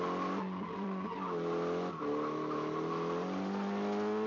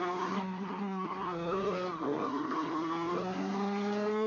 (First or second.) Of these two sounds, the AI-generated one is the second